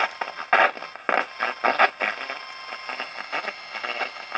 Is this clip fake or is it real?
real